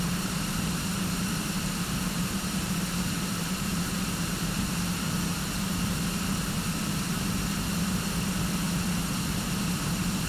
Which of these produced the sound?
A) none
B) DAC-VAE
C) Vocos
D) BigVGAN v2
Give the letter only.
D